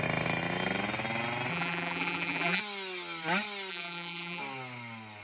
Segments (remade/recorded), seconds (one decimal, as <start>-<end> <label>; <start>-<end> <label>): 0.0-1.5 recorded; 1.5-2.6 remade; 2.6-3.7 recorded; 3.7-4.4 remade; 4.4-5.2 recorded